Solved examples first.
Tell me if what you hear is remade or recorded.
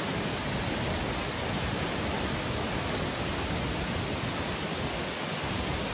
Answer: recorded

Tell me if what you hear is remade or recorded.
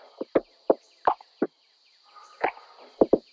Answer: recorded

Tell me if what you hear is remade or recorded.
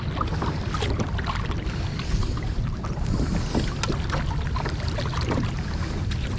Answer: recorded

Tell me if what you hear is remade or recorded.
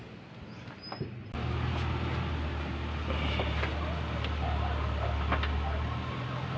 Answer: recorded